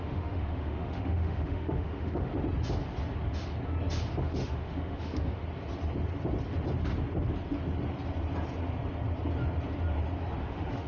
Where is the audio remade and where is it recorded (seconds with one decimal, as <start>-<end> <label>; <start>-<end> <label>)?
0.0-2.3 remade; 2.3-4.2 recorded; 4.2-5.4 remade; 5.4-10.4 recorded; 10.4-10.9 remade